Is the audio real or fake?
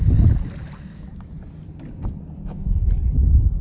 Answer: real